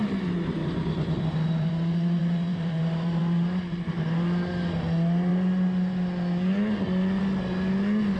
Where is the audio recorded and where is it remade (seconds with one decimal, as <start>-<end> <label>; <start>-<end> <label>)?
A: 0.0-0.6 recorded; 0.6-1.7 remade; 1.7-2.2 recorded; 2.2-3.2 remade; 3.2-8.2 recorded